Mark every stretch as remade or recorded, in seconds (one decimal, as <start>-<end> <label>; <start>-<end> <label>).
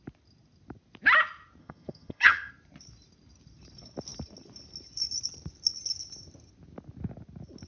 0.0-1.6 recorded; 1.6-2.5 remade; 2.5-7.7 recorded